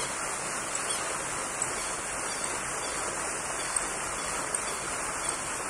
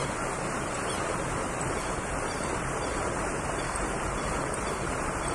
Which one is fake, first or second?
second